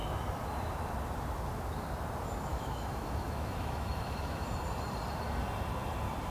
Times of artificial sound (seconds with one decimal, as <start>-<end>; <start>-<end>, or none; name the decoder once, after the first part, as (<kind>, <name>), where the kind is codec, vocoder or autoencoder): 2.5-4.4 (autoencoder, DAC-VAE)